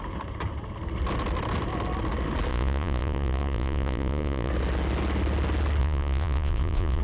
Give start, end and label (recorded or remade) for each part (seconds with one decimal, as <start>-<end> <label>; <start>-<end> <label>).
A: 0.0-2.5 recorded; 2.5-4.5 remade; 4.5-5.8 recorded; 5.8-7.0 remade